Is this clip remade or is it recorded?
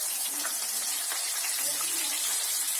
remade